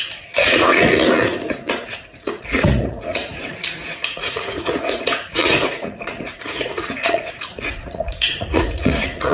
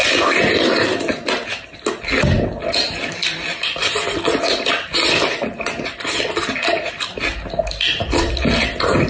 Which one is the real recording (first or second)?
second